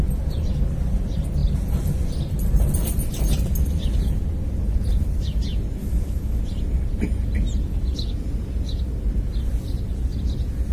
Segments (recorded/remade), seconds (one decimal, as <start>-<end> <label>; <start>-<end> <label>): 0.0-5.8 recorded; 5.8-6.4 remade; 6.4-10.7 recorded